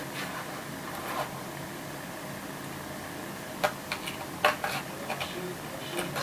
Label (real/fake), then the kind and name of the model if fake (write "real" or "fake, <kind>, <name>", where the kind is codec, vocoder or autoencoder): real